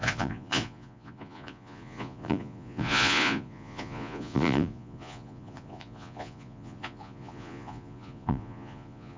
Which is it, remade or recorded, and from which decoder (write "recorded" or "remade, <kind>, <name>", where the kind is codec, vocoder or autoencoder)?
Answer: remade, vocoder, Vocos